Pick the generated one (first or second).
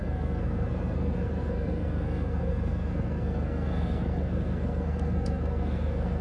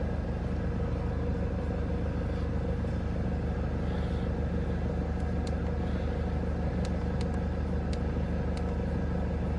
first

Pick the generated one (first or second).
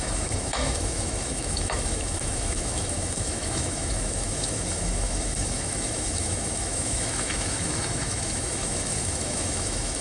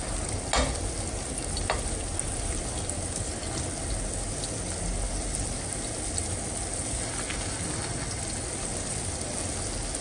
first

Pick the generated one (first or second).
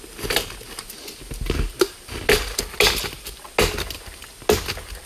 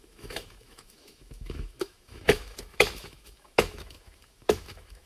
second